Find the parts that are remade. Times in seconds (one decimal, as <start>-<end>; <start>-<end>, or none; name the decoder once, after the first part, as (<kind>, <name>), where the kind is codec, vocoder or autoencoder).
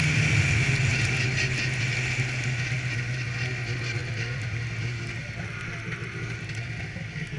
4.0-4.8 (vocoder, BigVGAN v2); 5.2-6.7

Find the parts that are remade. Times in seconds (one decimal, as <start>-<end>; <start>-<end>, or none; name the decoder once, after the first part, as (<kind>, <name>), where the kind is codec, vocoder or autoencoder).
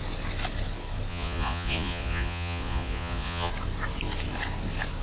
1.1-3.5 (vocoder, Vocos)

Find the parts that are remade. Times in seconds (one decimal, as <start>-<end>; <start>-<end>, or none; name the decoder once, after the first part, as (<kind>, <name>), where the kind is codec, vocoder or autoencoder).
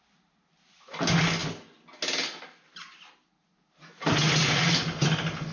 none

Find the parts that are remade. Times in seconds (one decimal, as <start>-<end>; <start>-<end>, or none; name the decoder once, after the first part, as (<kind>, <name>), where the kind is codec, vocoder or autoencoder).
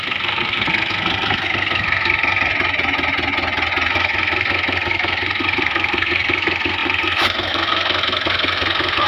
0.0-2.5 (codec, SNAC); 3.9-9.1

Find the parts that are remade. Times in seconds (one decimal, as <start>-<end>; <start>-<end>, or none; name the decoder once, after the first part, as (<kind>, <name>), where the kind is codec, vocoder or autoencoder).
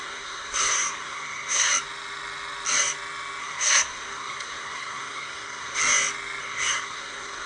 0.0-1.7 (codec, SNAC); 3.4-5.8; 6.4-7.5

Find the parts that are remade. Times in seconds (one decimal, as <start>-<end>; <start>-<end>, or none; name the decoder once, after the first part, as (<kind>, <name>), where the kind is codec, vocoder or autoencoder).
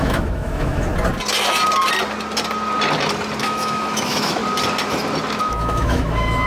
0.0-0.9 (autoencoder, DAC-VAE); 3.4-4.4; 5.4-6.5